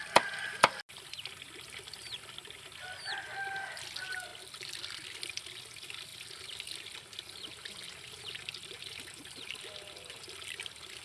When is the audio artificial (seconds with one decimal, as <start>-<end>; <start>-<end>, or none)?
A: none